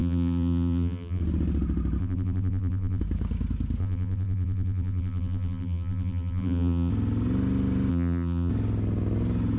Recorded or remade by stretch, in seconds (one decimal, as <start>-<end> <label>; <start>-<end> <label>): 0.0-1.2 remade; 1.2-2.0 recorded; 2.0-3.0 remade; 3.0-3.8 recorded; 3.8-6.9 remade; 6.9-7.9 recorded; 7.9-8.5 remade; 8.5-9.6 recorded